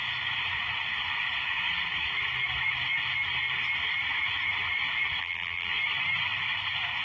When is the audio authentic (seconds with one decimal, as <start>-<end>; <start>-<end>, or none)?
0.0-5.2; 5.7-7.0